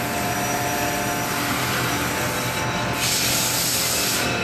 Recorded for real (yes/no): yes